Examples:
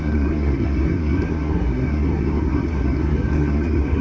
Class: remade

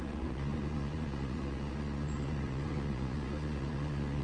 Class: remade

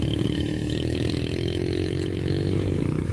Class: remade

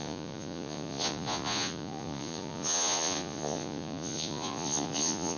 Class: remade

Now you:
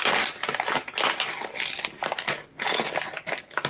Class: recorded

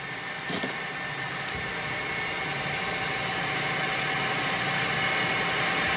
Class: recorded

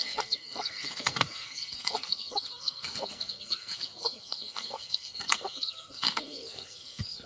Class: remade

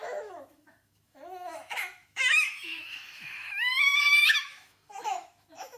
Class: remade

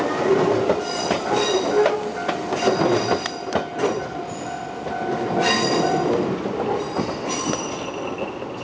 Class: recorded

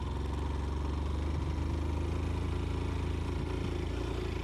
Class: recorded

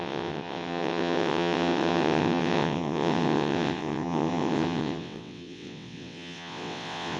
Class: remade